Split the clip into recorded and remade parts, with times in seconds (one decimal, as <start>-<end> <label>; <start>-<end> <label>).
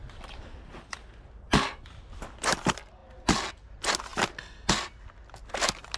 0.0-6.0 recorded